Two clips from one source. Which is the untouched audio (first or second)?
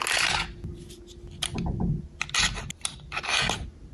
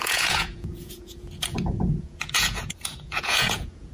first